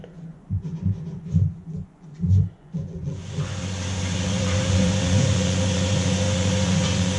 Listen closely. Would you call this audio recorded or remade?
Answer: remade